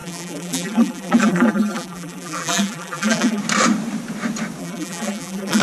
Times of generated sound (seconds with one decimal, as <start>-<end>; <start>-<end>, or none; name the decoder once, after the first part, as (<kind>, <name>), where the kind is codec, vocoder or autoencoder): 0.0-3.4 (vocoder, BigVGAN v2); 4.6-5.6